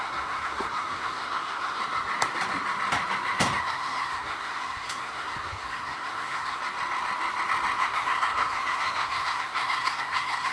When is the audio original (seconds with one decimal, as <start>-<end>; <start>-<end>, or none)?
1.8-3.6; 6.6-7.8